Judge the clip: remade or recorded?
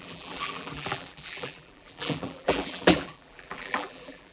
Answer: remade